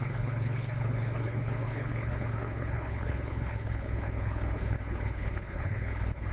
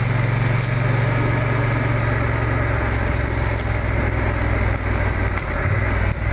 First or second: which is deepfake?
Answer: first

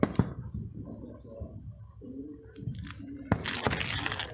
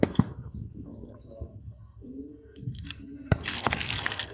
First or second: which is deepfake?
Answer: second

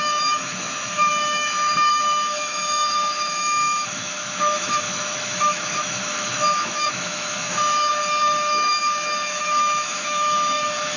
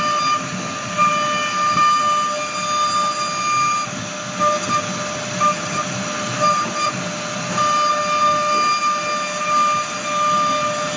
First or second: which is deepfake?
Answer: first